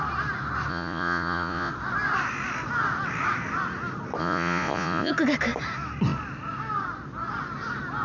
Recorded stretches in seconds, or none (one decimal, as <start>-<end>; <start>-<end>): 0.0-0.7; 1.7-4.2; 5.1-8.0